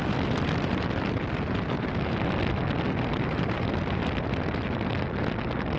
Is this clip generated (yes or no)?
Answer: no